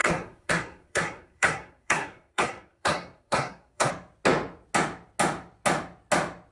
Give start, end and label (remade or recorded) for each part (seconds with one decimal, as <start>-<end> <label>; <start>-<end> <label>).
0.0-3.9 remade; 3.9-6.5 recorded